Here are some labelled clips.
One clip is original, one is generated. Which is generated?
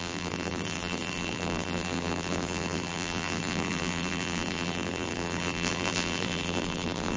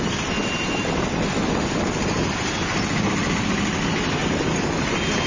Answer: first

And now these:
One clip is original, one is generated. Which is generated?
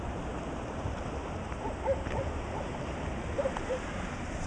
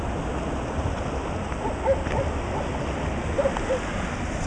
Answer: first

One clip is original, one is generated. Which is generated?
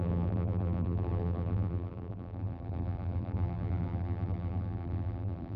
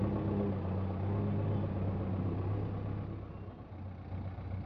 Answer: first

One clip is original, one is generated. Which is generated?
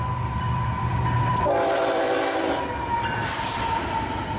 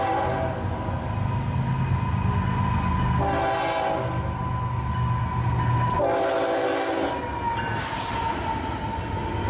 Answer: first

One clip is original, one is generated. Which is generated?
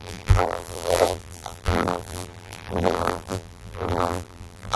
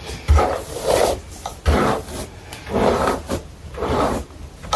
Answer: first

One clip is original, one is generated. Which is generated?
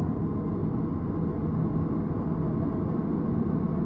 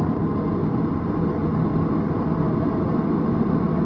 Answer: second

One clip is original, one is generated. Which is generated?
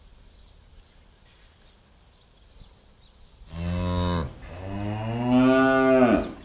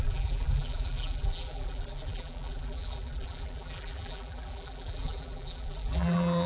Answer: second